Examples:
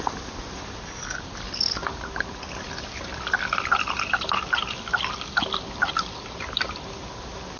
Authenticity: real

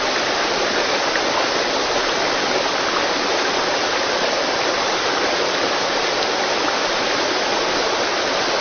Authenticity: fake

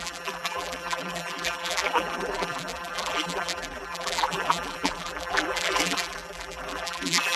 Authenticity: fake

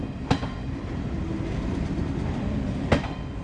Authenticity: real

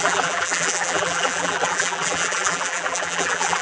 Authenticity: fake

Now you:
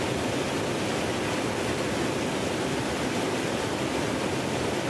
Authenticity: fake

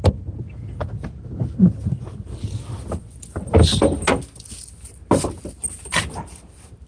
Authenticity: real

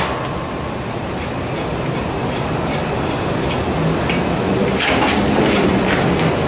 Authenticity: real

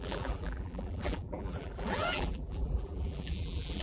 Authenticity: fake